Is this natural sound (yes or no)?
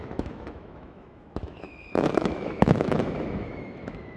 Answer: no